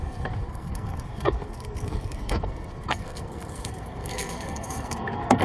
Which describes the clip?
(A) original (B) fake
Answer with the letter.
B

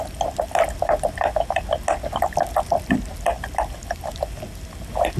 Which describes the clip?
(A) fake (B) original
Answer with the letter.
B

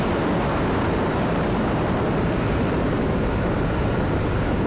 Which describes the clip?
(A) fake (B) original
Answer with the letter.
A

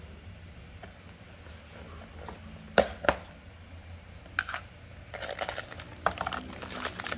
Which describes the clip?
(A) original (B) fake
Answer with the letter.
A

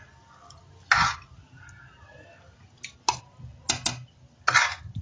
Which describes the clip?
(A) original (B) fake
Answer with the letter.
A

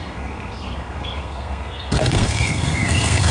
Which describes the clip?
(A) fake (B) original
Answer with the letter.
A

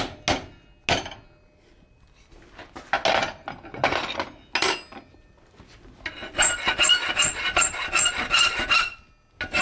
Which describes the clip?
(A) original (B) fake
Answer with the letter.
A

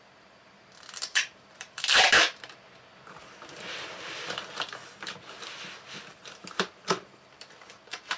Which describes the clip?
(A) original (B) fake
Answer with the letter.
B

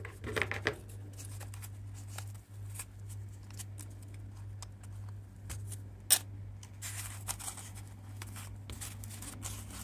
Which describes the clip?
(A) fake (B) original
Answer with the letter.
B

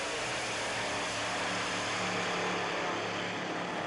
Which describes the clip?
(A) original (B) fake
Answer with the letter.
A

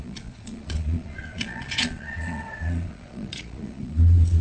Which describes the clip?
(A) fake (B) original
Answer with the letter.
A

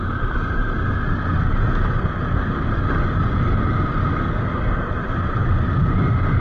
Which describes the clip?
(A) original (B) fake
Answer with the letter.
A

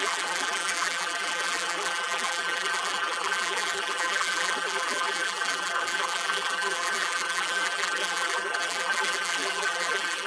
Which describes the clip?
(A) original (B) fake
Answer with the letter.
B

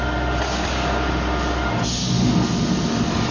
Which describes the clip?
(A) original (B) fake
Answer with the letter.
A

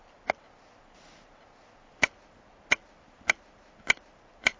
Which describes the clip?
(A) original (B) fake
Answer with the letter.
A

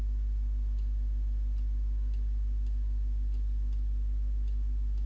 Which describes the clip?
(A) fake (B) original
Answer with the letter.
A